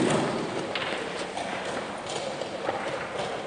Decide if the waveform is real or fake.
real